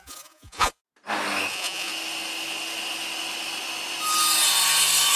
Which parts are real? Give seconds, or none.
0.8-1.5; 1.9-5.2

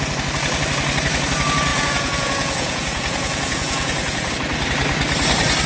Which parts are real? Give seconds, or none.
0.0-1.7; 4.3-5.7

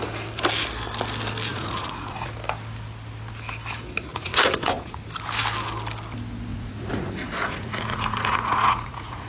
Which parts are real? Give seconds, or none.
0.0-1.5; 2.3-4.1; 5.0-6.5

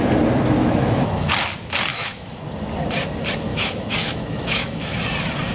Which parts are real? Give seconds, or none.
0.0-0.6; 1.3-1.9; 2.4-3.5; 5.0-5.5

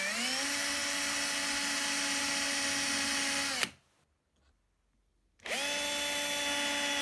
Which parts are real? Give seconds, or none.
0.0-7.0